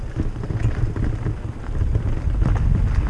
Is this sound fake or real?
real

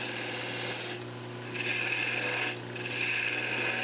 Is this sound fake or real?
real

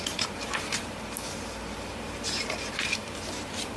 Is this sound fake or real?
fake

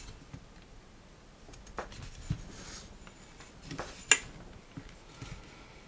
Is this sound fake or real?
real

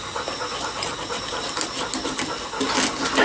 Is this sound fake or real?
real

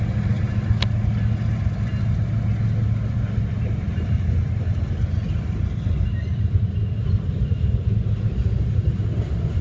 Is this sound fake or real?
real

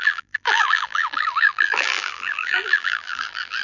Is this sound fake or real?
fake